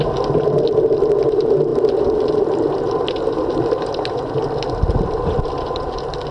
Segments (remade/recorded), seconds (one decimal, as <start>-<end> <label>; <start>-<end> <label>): 0.0-6.3 recorded